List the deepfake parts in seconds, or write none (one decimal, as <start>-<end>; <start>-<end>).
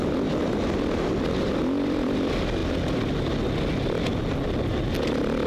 2.6-3.1